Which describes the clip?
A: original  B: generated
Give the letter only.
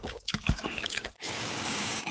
B